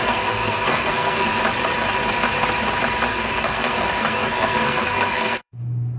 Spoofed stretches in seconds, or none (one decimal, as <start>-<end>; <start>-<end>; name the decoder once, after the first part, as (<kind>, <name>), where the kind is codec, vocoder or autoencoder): 0.0-1.4 (codec, SNAC); 3.1-5.6